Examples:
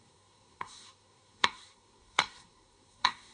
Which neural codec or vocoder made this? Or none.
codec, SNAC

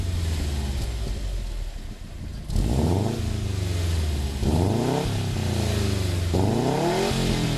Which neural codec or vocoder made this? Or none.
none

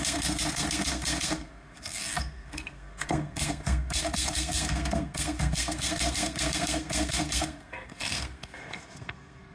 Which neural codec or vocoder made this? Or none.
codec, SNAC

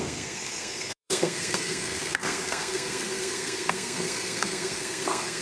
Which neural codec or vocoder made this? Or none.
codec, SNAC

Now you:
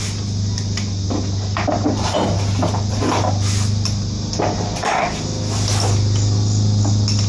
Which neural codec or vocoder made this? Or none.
none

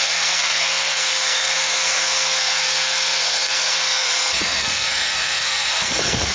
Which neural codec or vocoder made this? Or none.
codec, SNAC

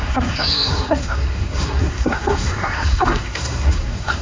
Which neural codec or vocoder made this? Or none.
codec, SNAC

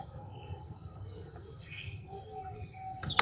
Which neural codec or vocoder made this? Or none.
codec, SNAC